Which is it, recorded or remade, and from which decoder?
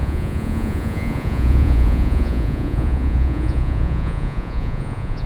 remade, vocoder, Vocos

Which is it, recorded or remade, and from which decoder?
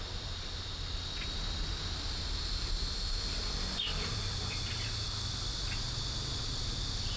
recorded